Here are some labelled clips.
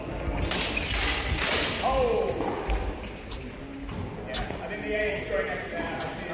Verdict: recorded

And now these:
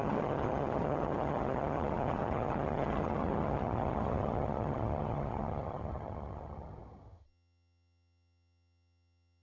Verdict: remade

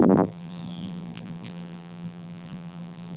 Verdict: remade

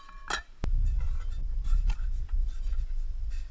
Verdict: recorded